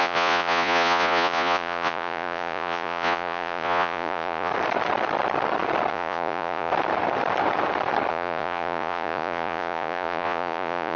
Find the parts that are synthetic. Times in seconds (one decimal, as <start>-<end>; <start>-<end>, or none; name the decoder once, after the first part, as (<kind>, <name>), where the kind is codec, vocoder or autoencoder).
0.0-4.5 (vocoder, Vocos); 5.9-6.7; 8.1-11.0